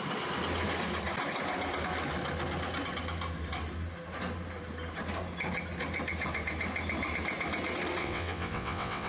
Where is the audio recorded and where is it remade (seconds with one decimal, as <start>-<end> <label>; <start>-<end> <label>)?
0.0-8.0 recorded; 8.0-9.1 remade